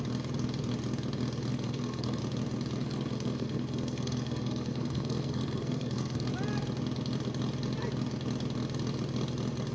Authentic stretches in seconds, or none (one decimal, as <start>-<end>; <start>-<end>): 0.0-1.5; 2.2-2.8; 6.3-9.7